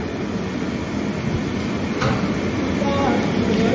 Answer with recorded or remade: recorded